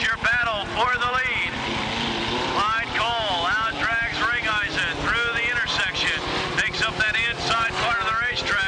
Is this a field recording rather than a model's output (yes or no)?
yes